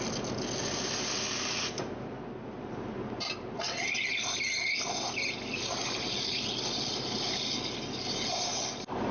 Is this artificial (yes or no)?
no